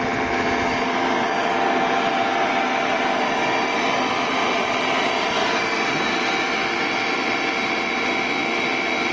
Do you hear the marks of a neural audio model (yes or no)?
yes